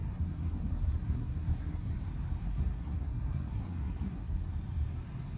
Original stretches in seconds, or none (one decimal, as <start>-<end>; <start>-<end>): 1.9-2.4; 4.5-5.4